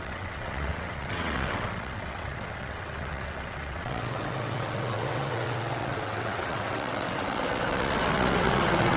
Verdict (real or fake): fake